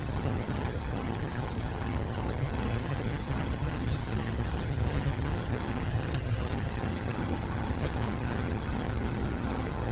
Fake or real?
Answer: fake